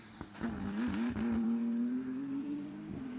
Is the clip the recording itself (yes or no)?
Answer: no